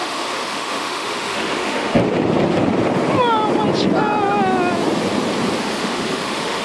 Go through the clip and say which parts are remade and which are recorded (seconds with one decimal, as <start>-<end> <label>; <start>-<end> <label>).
0.0-1.9 remade; 1.9-5.6 recorded; 5.6-6.6 remade